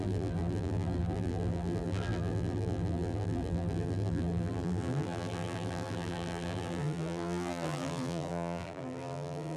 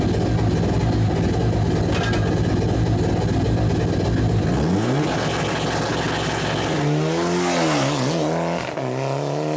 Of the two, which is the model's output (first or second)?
first